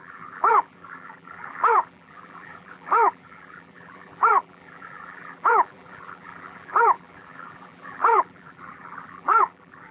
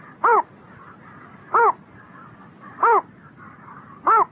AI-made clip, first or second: first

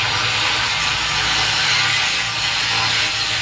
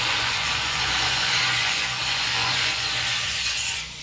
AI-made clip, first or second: second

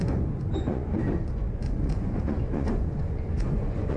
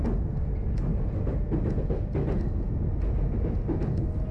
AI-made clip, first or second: first